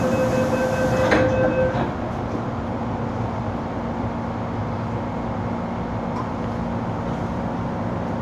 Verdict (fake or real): real